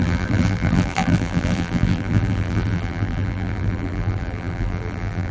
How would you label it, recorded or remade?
remade